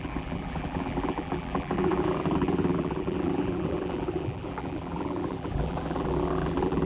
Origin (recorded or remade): remade